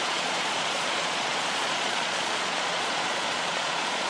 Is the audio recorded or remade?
remade